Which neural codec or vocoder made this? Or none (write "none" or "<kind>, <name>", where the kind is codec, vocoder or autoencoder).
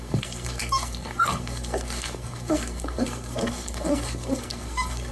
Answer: codec, SNAC